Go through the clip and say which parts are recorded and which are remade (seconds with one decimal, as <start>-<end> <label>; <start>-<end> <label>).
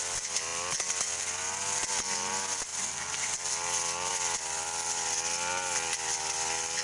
0.0-6.8 recorded